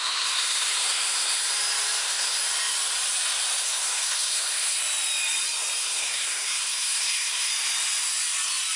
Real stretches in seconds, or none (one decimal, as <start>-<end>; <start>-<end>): 1.5-2.0; 2.4-3.6; 4.8-5.8; 7.5-8.8